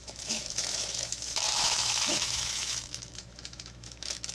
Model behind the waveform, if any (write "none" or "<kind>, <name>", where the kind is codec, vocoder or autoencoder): autoencoder, DAC-VAE